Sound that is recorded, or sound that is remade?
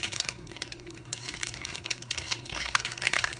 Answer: remade